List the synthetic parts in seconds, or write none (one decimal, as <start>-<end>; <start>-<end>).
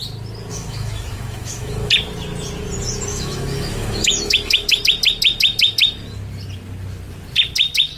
0.5-1.9; 3.1-4.8